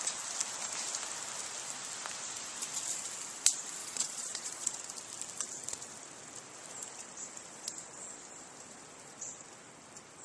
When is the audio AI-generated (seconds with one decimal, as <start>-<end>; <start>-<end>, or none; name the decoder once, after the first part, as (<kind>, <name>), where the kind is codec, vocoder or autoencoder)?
3.8-4.7 (vocoder, Vocos)